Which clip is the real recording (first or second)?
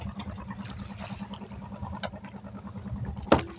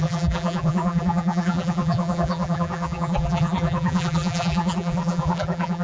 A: first